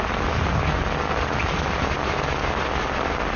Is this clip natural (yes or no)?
yes